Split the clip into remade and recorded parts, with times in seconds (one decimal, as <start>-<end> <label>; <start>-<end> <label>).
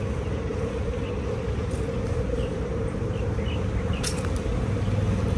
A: 0.0-5.4 recorded